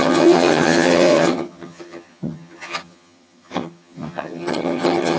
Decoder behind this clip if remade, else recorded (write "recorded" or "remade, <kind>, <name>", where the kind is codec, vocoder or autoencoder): remade, vocoder, HiFi-GAN